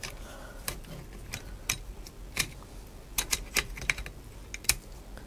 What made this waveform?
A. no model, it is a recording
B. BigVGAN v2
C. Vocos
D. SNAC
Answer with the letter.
A